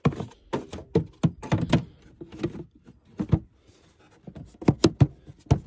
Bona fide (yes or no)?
yes